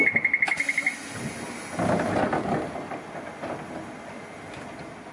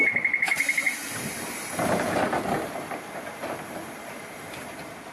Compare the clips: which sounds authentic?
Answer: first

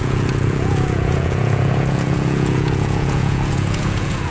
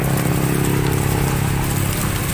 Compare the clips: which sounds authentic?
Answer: second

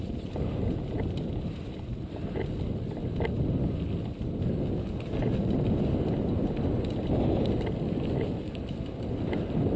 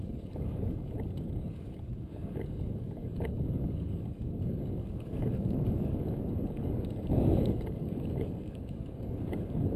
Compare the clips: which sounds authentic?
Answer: first